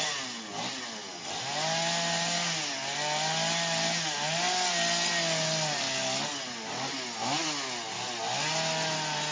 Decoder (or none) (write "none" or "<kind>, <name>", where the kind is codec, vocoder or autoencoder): none